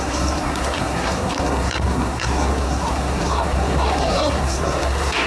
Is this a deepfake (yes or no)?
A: yes